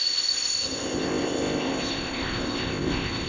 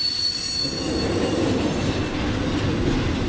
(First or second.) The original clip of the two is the second